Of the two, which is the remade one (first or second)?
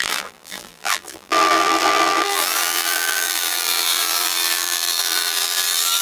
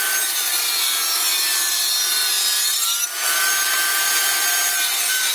first